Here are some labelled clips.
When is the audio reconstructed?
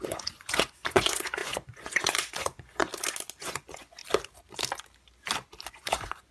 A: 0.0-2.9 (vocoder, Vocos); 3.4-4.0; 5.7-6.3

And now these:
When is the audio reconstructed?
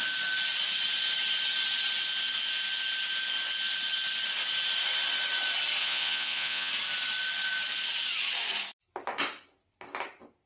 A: 5.8-6.7 (vocoder, Vocos)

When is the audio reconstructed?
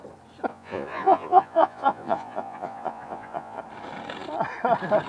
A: 0.5-3.6 (vocoder, Vocos)